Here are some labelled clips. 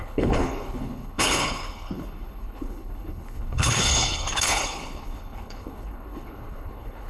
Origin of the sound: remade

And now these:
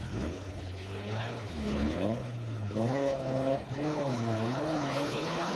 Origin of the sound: remade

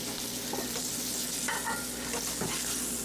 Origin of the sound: recorded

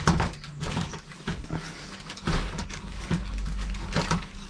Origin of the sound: remade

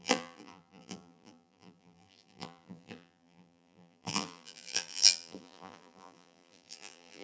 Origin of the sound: remade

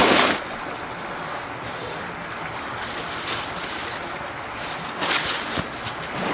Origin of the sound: recorded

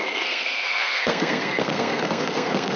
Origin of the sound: remade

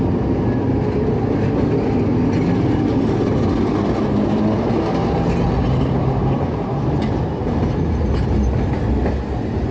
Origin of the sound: recorded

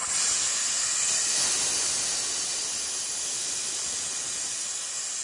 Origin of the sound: recorded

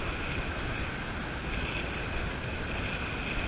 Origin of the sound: recorded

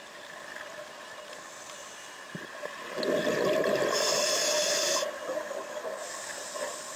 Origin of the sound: recorded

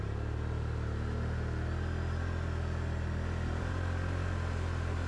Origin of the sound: recorded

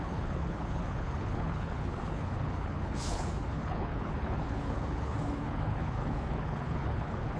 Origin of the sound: remade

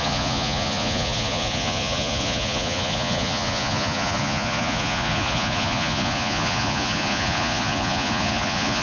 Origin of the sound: remade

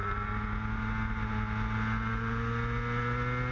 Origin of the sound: recorded